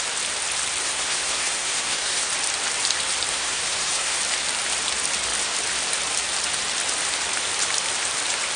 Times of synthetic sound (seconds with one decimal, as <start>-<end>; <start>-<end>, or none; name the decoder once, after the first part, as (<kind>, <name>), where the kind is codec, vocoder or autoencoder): 0.8-2.3 (codec, SNAC); 3.3-4.2